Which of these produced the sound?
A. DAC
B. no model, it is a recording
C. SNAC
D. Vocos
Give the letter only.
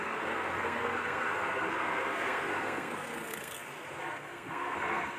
C